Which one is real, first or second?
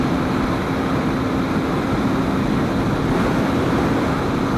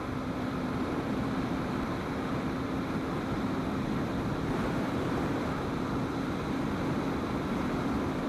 first